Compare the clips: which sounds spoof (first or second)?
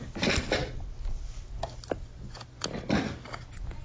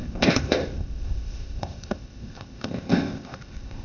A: second